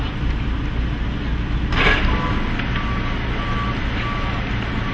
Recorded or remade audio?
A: recorded